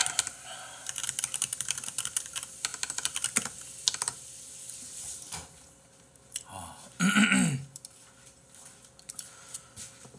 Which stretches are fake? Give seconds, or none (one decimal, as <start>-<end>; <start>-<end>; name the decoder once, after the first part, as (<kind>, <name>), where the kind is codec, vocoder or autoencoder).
none